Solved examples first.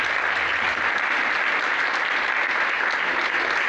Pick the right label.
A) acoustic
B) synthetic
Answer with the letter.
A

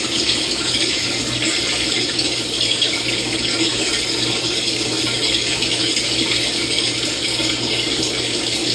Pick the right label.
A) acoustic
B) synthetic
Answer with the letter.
B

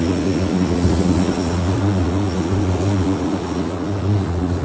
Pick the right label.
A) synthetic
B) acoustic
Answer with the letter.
A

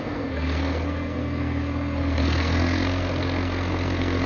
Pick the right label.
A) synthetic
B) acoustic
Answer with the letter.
A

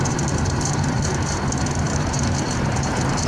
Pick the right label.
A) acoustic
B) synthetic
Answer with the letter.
B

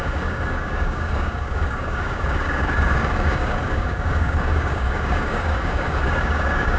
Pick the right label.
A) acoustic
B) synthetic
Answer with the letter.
B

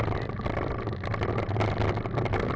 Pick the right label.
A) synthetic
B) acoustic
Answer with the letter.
B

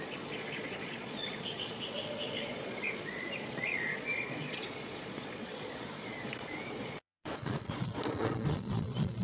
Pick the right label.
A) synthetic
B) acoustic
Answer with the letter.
A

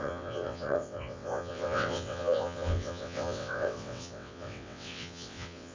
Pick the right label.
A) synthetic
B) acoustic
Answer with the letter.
A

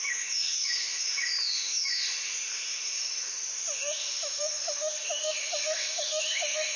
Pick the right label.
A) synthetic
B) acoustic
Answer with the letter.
A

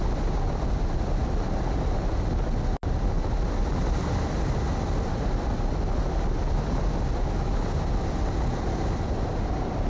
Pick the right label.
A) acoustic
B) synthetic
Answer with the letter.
A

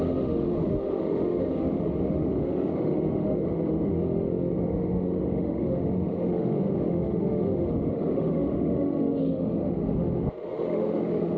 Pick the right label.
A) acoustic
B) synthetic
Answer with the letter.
B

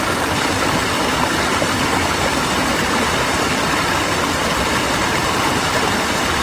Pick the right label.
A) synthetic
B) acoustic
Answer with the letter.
B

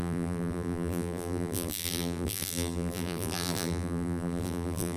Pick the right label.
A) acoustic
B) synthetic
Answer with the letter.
B